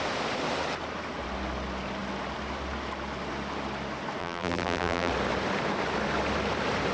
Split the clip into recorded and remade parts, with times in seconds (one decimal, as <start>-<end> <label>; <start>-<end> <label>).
0.0-4.2 recorded; 4.2-5.1 remade; 5.1-6.9 recorded